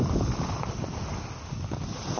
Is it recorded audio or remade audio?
recorded